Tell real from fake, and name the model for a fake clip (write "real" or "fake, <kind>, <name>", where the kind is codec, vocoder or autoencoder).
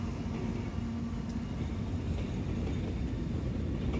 real